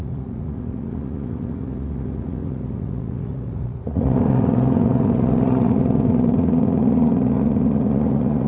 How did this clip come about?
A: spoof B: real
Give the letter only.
A